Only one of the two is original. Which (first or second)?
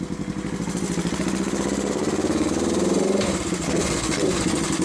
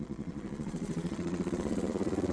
first